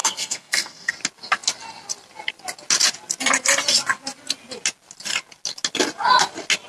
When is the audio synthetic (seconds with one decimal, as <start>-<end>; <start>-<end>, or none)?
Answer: 0.0-0.9